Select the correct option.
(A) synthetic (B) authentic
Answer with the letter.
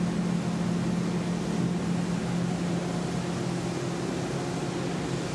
B